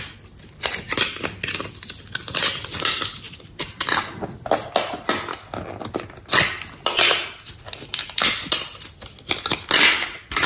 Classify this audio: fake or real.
real